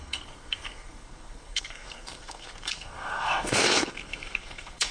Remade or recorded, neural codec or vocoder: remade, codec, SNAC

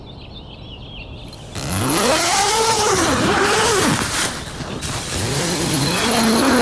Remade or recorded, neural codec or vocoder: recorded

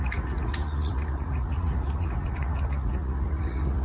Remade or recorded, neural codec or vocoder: remade, vocoder, Vocos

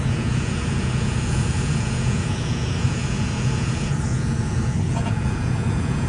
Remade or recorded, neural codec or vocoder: remade, vocoder, Vocos